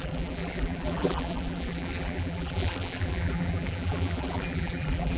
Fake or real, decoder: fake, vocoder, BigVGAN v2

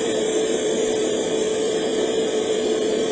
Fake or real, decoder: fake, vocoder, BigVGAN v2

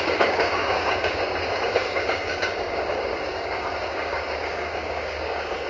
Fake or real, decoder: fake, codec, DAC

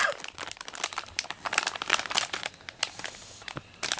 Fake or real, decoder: real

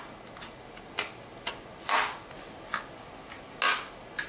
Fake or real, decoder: real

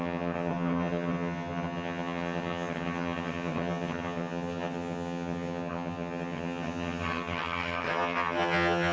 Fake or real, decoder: fake, vocoder, HiFi-GAN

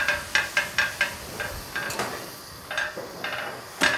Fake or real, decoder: real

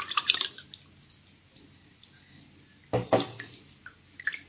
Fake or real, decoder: real